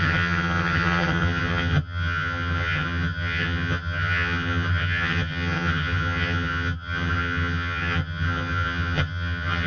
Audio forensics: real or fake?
fake